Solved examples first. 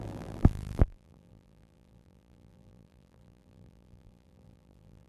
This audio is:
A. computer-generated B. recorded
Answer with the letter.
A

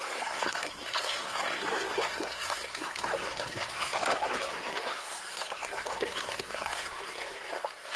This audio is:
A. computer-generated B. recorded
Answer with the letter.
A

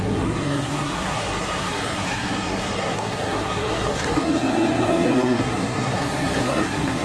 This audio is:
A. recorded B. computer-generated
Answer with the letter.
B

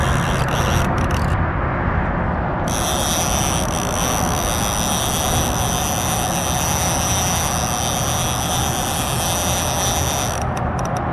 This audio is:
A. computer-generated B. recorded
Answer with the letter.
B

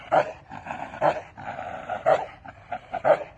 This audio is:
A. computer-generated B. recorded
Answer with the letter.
A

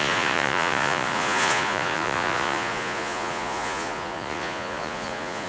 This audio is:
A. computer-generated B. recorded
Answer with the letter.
A